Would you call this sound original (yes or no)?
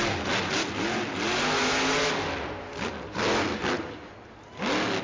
yes